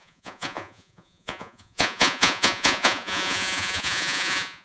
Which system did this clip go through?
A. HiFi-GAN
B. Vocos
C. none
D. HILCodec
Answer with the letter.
B